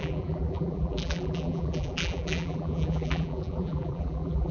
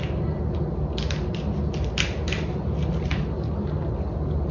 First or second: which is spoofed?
first